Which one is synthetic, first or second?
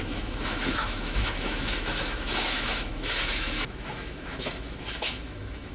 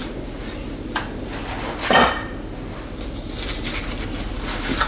first